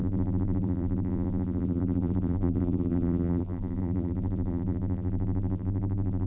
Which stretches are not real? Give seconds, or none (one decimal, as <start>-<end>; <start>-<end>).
0.0-6.3